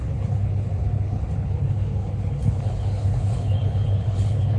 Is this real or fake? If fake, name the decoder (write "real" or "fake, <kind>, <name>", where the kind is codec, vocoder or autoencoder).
fake, codec, HILCodec